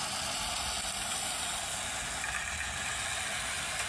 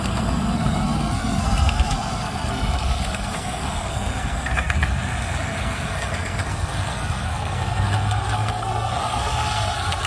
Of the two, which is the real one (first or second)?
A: first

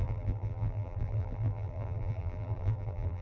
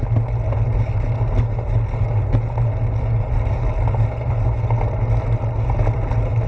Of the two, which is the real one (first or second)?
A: second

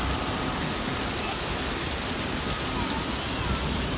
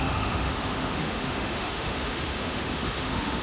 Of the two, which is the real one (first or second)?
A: first